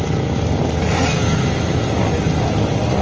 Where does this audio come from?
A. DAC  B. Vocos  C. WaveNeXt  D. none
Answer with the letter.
D